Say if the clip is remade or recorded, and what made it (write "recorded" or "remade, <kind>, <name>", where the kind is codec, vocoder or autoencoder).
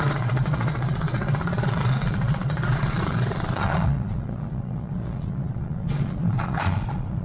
remade, vocoder, Vocos